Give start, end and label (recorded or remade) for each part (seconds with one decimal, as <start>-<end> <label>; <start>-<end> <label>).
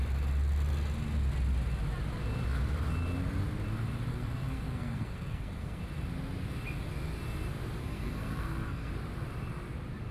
0.0-4.1 recorded; 4.1-5.8 remade; 5.8-7.8 recorded; 7.8-8.9 remade; 8.9-10.1 recorded